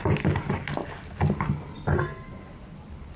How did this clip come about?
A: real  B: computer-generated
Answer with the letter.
A